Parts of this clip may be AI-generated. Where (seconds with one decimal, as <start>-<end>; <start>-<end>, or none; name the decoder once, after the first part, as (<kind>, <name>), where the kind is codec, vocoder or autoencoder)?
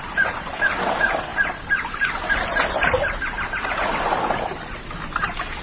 none